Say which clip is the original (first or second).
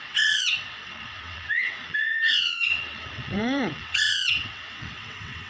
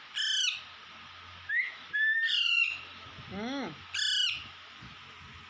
second